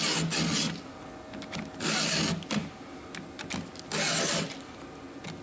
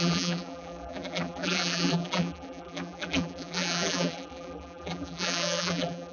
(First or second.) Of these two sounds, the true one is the first